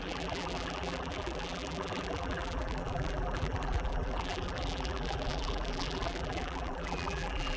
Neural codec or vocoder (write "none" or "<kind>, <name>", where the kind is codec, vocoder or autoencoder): vocoder, BigVGAN v2